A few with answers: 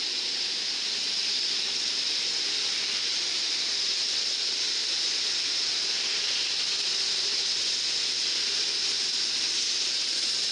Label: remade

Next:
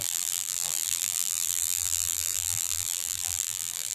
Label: remade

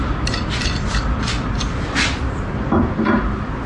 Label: recorded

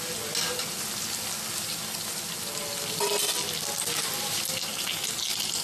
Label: recorded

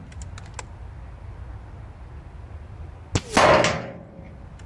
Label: recorded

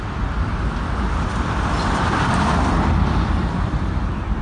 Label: remade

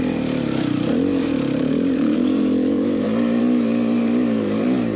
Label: remade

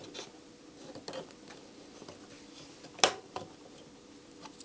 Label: recorded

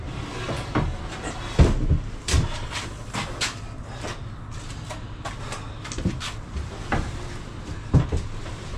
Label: recorded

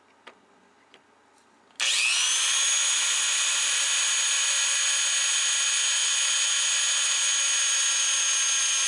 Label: recorded